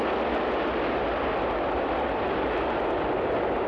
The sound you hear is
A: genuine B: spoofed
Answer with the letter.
A